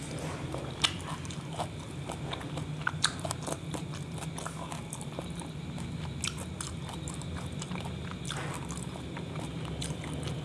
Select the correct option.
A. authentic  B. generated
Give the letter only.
A